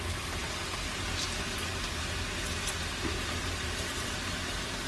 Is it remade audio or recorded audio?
recorded